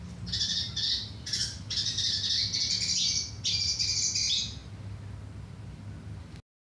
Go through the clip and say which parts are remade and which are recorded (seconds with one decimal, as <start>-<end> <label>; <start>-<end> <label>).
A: 0.0-6.7 recorded